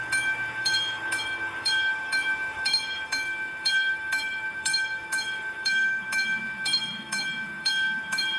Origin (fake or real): fake